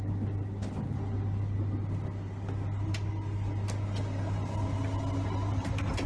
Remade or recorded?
recorded